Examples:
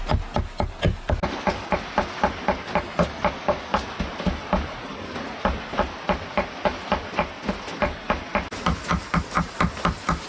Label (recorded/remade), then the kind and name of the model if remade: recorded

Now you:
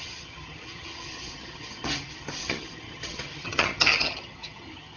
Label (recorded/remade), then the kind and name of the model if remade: remade, vocoder, HiFi-GAN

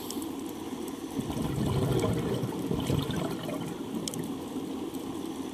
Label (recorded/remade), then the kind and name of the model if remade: recorded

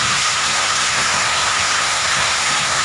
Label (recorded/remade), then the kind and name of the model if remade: remade, codec, SNAC